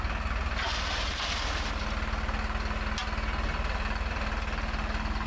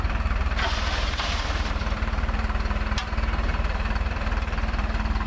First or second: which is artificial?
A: second